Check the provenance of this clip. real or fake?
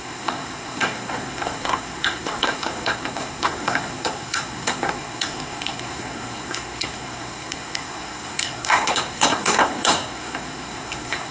fake